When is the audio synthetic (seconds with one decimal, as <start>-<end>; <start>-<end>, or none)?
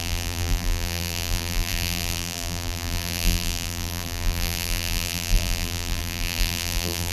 0.0-7.1